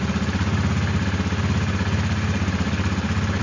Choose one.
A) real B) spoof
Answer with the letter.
A